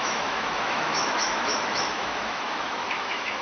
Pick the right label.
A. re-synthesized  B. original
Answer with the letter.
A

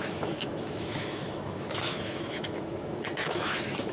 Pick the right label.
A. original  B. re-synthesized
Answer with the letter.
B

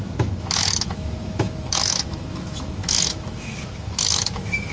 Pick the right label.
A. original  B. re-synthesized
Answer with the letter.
B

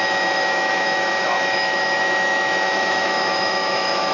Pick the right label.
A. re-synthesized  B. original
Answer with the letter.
A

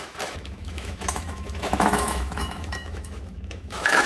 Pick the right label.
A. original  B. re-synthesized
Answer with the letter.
B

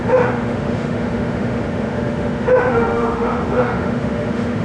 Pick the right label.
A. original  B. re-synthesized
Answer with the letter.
B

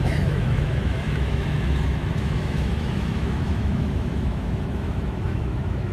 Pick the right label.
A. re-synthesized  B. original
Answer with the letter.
A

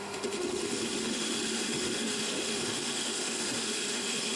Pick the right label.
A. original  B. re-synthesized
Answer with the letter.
B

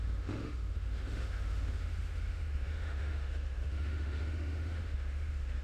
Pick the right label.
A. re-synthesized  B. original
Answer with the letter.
A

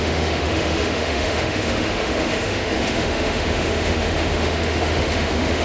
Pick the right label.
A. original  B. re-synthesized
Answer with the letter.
B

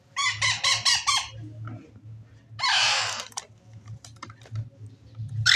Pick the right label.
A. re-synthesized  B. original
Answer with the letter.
B